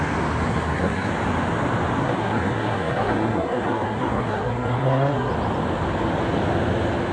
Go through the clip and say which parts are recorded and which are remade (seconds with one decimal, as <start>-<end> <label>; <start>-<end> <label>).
0.0-0.5 recorded; 0.5-1.1 remade; 1.1-2.0 recorded; 2.0-5.3 remade; 5.3-7.1 recorded